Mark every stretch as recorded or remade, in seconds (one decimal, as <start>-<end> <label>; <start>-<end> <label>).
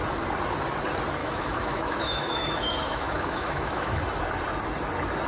0.0-1.2 recorded; 1.2-4.0 remade; 4.0-5.3 recorded